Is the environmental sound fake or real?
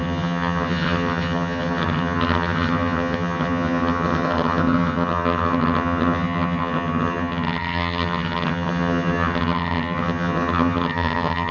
fake